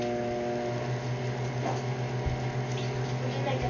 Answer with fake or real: real